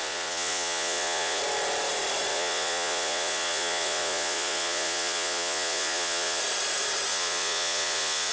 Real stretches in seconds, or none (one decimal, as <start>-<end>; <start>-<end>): 1.4-2.3; 6.4-7.1